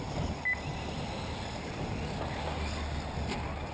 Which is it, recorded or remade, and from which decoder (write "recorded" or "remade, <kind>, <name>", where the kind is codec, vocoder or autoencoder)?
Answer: recorded